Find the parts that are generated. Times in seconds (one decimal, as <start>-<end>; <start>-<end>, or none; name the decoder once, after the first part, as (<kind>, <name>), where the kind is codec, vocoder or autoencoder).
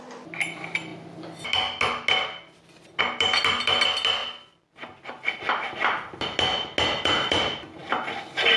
none